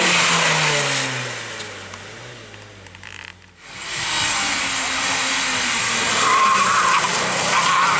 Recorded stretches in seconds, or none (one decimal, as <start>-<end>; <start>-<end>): 0.0-8.0